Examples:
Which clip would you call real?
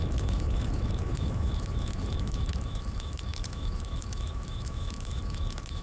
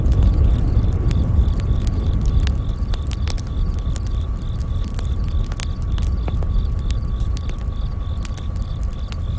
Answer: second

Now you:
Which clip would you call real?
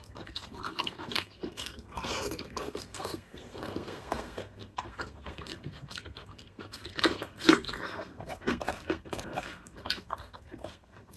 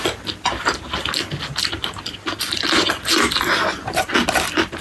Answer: second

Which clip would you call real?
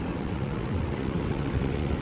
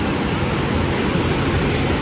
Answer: second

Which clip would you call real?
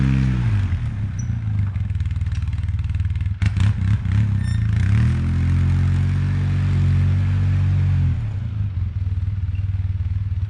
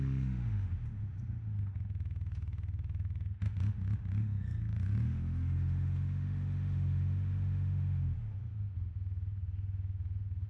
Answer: first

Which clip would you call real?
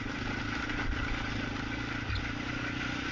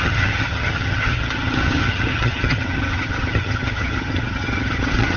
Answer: first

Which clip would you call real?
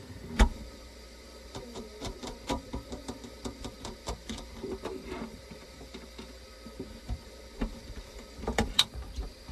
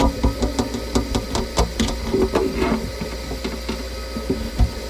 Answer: second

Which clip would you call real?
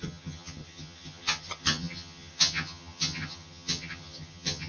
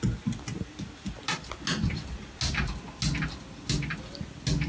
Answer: second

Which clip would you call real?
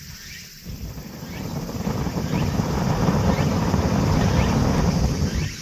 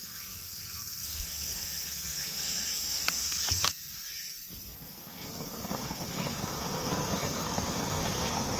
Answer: first